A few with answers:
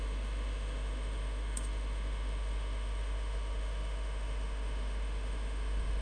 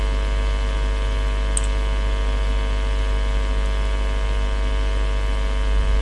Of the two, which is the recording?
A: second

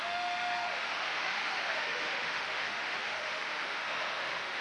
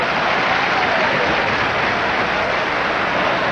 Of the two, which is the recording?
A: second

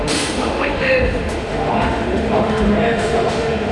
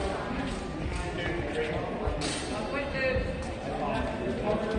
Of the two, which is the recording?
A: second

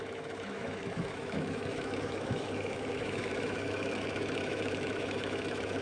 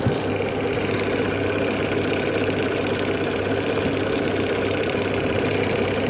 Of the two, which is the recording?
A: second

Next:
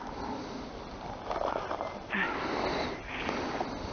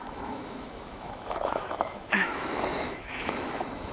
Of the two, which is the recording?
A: first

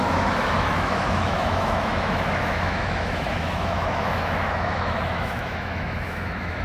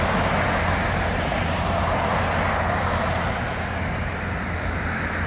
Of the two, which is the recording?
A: second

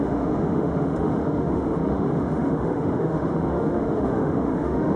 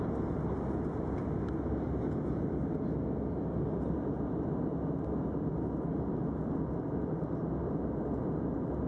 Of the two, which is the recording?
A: second